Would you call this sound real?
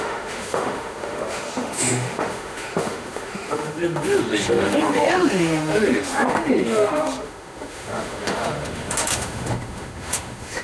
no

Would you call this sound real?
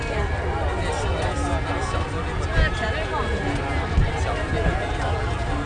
yes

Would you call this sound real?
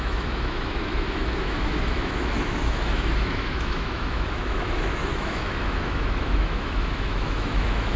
no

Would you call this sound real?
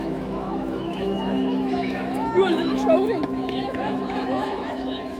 no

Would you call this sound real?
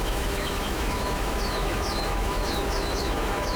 no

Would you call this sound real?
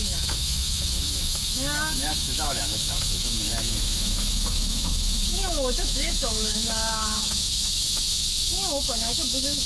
no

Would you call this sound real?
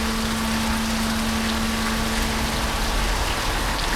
yes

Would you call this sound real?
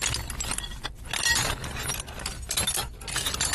yes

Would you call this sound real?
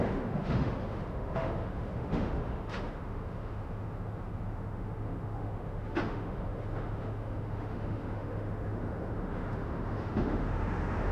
no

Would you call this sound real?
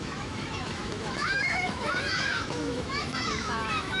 no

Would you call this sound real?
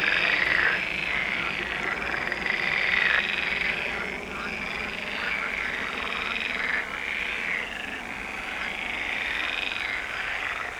yes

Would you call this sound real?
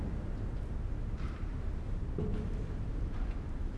yes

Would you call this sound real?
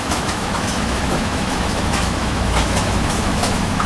no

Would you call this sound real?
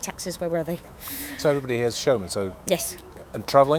no